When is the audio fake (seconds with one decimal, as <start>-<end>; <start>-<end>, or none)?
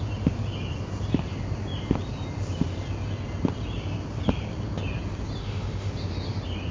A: 5.4-5.9